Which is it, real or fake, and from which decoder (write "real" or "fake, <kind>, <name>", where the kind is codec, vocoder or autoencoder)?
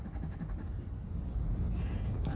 real